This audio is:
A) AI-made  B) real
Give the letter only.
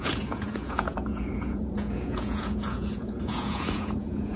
A